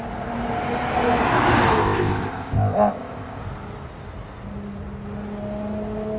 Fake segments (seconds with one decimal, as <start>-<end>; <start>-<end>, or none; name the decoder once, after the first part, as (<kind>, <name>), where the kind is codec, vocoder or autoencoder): 1.8-3.4 (codec, ZipCodec)